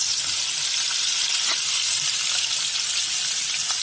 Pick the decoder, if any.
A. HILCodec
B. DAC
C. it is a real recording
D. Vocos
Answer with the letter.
C